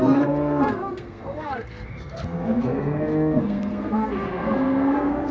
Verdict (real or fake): fake